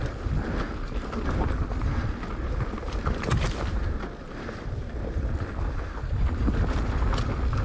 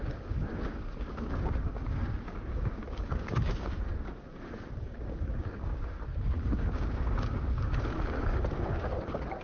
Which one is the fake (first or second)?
second